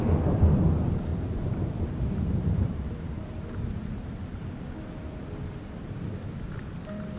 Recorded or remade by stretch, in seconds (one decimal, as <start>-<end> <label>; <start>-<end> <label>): 0.0-1.1 recorded; 1.1-4.5 remade; 4.5-7.2 recorded